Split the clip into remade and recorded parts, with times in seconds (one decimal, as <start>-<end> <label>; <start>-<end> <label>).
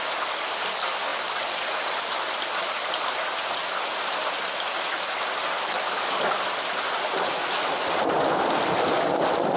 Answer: 0.0-9.6 recorded